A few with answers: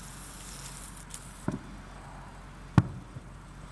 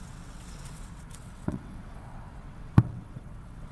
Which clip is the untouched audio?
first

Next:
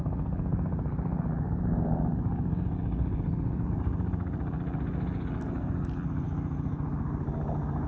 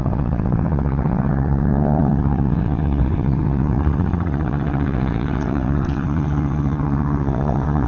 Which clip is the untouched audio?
first